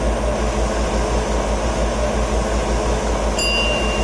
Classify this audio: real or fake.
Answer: real